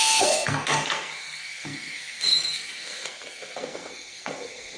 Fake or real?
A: fake